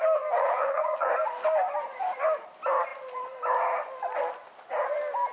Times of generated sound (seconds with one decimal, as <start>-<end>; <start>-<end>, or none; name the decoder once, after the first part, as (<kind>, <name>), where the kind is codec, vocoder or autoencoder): 0.4-1.1 (vocoder, HiFi-GAN)